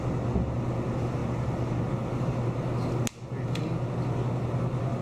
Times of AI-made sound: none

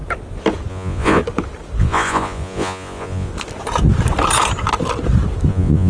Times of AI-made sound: 0.7-1.2 (vocoder, Vocos); 1.8-3.3; 5.5-5.9